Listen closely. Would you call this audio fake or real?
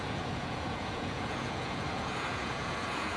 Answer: fake